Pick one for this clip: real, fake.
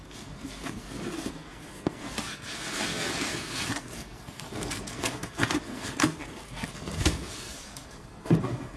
fake